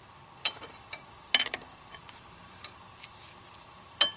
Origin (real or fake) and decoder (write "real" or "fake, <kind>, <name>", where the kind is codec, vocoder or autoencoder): fake, vocoder, BigVGAN v2